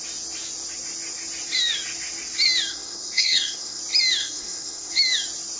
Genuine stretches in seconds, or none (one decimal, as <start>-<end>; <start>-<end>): 0.0-2.7; 3.8-4.2; 4.9-5.6